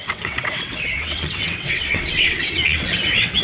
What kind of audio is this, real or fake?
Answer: fake